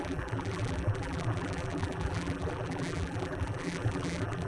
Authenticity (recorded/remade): remade